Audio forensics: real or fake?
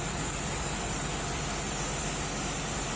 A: real